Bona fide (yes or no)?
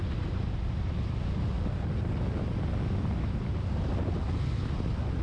yes